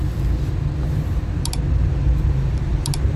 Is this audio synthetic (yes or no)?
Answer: no